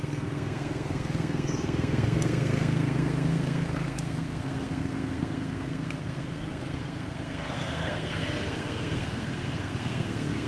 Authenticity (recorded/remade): remade